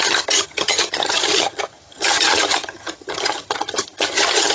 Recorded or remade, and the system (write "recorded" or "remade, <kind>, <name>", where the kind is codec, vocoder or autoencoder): remade, vocoder, HiFi-GAN